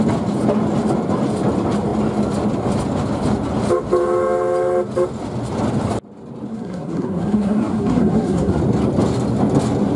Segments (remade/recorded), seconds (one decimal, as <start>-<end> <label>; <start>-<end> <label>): 0.0-6.5 recorded; 6.5-8.6 remade; 8.6-10.0 recorded